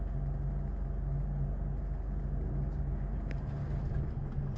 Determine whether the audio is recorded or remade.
recorded